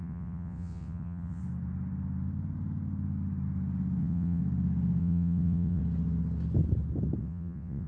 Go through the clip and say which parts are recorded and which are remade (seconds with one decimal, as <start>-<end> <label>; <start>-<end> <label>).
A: 0.0-1.4 remade; 1.4-4.0 recorded; 4.0-4.4 remade; 4.4-5.0 recorded; 5.0-5.8 remade; 5.8-7.2 recorded; 7.2-7.9 remade